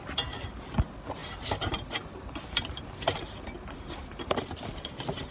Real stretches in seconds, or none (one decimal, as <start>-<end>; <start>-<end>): 0.0-5.3